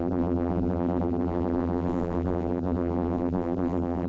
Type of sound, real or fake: fake